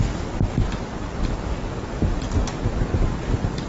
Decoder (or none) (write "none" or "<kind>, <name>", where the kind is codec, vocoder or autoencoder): none